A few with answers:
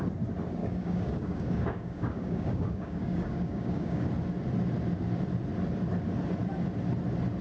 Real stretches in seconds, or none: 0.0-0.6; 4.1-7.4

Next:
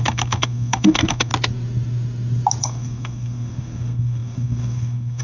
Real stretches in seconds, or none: 1.3-2.6

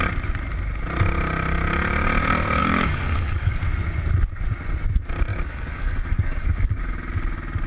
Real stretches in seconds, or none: 0.0-2.6; 3.6-5.3; 6.8-7.7